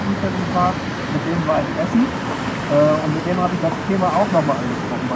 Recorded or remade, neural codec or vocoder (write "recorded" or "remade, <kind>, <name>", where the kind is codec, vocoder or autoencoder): remade, vocoder, BigVGAN v2